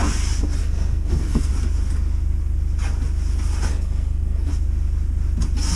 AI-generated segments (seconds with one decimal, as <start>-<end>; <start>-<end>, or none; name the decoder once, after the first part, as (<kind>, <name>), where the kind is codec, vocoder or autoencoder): 0.6-1.5 (codec, SNAC); 3.7-4.5